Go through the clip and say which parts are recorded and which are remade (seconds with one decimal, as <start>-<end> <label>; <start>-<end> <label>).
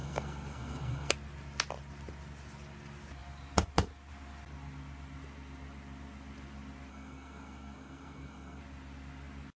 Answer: 0.0-1.1 remade; 1.1-6.9 recorded; 6.9-8.6 remade; 8.6-9.6 recorded